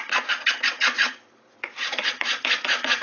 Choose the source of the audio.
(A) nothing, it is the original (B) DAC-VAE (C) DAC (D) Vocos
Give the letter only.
D